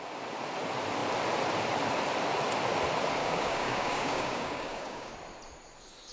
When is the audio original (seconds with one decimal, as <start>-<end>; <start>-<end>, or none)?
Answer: 0.0-3.2; 5.1-6.1